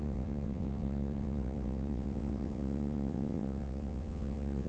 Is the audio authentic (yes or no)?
no